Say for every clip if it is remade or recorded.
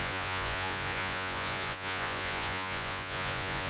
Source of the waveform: remade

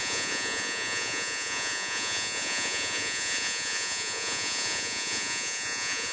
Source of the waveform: remade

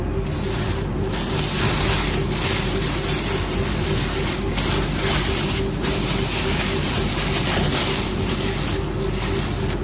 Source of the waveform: recorded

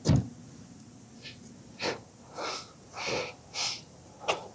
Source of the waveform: recorded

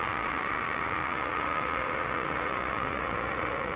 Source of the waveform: remade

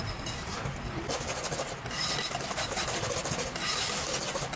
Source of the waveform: recorded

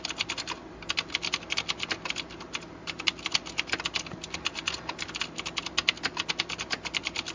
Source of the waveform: recorded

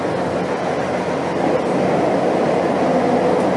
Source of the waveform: recorded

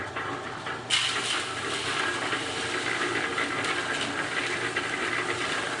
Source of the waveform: recorded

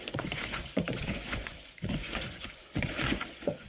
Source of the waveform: remade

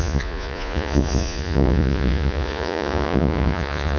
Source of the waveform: remade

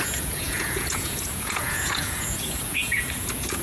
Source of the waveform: remade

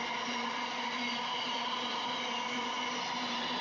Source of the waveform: recorded